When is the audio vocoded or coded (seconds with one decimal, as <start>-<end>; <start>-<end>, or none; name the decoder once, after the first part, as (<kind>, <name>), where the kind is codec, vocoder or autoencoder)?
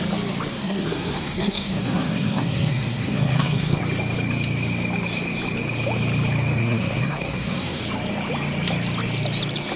0.5-3.8 (codec, SNAC); 6.6-7.8